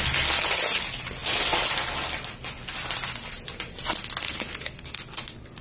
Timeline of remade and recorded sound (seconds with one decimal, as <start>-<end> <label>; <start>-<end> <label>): 0.0-5.6 recorded